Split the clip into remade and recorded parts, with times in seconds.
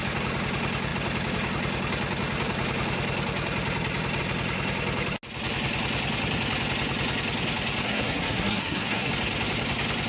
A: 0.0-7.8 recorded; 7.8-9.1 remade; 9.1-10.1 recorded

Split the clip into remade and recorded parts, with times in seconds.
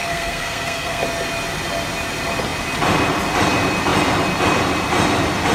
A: 0.0-1.0 remade; 1.0-5.5 recorded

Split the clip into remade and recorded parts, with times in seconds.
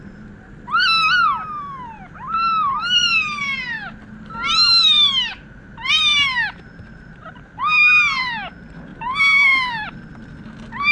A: 0.0-10.9 recorded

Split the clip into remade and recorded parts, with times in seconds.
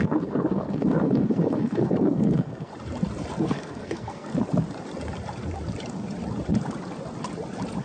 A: 0.0-2.7 remade; 2.7-3.4 recorded; 3.4-4.3 remade; 4.3-7.8 recorded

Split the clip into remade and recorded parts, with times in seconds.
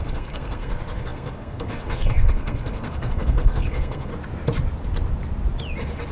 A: 0.0-4.1 remade; 4.1-6.1 recorded